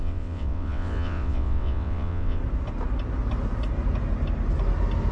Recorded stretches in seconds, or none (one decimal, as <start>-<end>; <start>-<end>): 2.4-5.1